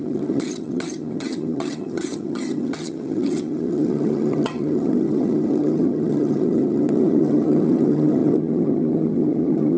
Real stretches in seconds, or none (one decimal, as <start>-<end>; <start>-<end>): none